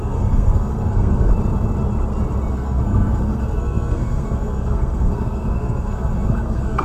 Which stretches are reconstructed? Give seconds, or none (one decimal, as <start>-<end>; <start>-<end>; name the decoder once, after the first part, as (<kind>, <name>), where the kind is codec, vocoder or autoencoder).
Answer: 0.0-1.3 (codec, SNAC); 2.5-6.8